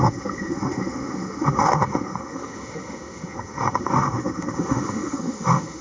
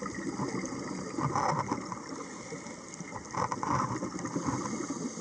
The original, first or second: second